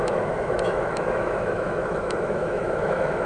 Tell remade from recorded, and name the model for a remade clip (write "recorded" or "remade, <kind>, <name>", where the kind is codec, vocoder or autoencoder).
remade, autoencoder, DAC-VAE